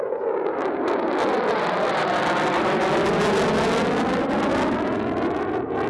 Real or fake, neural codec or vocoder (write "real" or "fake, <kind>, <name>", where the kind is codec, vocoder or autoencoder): real